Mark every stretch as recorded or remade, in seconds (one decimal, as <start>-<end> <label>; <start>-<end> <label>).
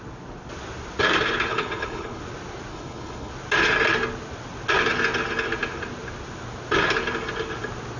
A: 0.0-1.5 recorded; 1.5-2.2 remade; 2.2-2.7 recorded; 2.7-3.3 remade; 3.3-8.0 recorded